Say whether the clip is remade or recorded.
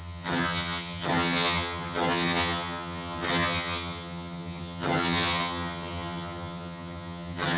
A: remade